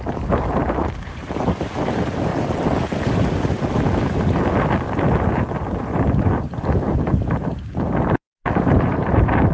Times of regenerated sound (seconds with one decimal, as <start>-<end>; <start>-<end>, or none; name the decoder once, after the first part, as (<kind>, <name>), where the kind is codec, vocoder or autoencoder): 0.0-2.3 (vocoder, BigVGAN v2); 5.3-9.5